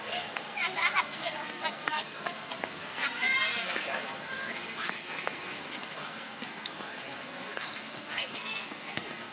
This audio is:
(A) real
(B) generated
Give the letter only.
B